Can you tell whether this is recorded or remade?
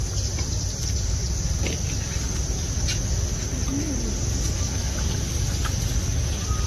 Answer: recorded